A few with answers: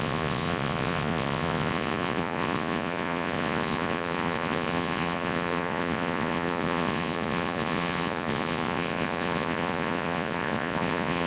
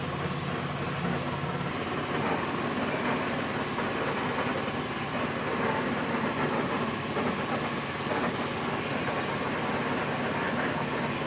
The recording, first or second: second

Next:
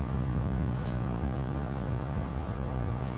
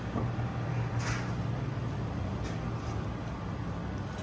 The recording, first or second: second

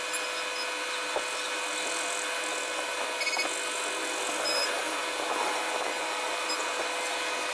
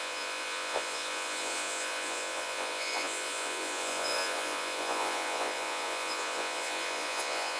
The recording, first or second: first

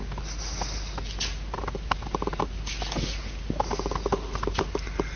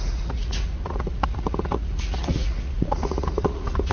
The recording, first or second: first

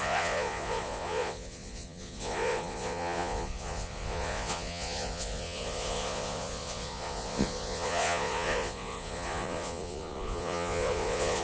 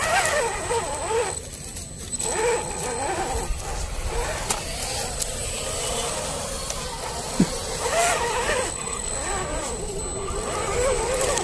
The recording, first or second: second